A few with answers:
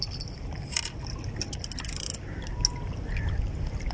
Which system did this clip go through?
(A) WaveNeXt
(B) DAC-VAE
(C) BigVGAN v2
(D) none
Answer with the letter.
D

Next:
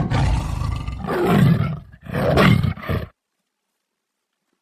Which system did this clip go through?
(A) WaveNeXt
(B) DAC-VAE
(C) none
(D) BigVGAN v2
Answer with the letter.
C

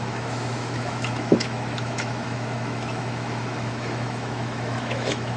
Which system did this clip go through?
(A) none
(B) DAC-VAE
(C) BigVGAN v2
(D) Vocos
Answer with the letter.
B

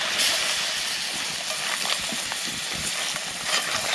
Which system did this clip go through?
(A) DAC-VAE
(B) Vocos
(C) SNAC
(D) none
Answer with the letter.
D